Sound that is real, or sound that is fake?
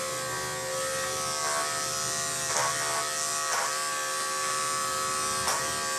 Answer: real